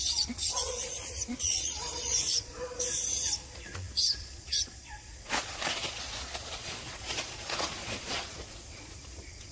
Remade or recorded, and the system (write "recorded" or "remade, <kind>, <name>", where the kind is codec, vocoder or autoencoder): remade, vocoder, Vocos